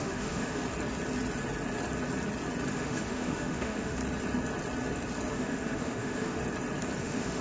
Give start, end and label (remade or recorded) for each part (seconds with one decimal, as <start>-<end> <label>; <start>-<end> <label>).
0.0-0.6 remade; 0.6-2.7 recorded; 2.7-4.0 remade; 4.0-5.3 recorded; 5.3-6.4 remade; 6.4-7.0 recorded; 7.0-7.4 remade